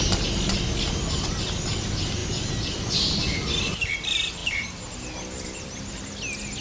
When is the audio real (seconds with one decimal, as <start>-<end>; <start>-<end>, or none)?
0.0-4.4; 5.9-6.6